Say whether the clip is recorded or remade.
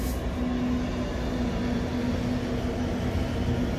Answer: recorded